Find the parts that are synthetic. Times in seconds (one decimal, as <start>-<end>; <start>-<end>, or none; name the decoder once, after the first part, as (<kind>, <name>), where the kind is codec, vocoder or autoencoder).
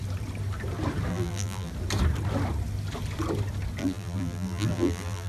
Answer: 1.1-1.7 (vocoder, BigVGAN v2); 3.8-5.3